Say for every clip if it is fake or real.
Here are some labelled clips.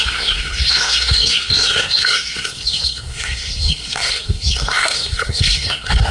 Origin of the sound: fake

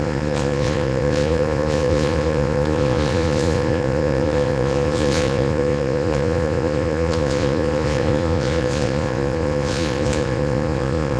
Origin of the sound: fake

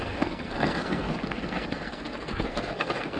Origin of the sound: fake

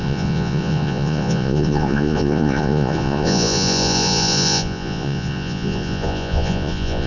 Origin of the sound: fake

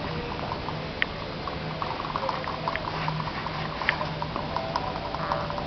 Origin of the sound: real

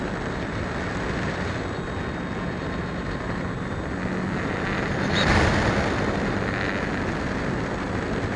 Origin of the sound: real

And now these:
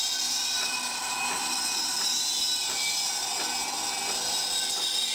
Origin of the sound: real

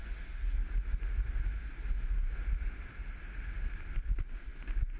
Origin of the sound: real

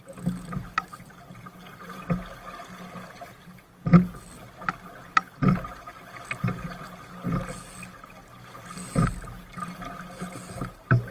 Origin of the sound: real